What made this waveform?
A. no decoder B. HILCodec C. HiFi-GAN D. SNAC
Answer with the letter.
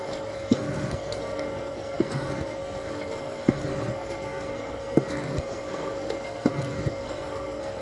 D